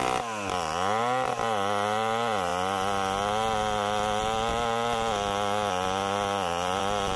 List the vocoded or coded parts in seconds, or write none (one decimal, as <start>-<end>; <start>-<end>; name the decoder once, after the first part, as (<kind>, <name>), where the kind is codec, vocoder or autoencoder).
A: none